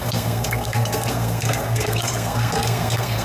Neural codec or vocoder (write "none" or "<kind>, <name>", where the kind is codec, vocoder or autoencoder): codec, SNAC